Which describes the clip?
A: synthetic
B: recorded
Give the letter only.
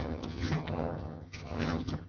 A